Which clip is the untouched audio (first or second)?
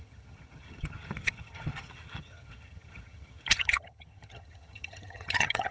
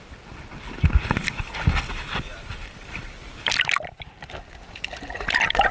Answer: second